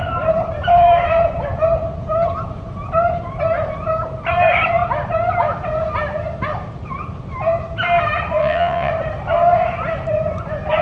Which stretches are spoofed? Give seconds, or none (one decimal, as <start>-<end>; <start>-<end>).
8.4-8.9